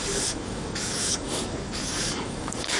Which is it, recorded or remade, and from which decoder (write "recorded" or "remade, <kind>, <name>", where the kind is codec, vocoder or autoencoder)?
remade, codec, DAC